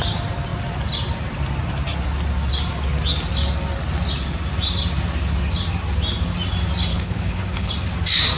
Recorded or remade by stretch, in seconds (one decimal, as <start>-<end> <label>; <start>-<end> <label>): 0.0-6.9 recorded; 6.9-7.7 remade; 7.7-8.4 recorded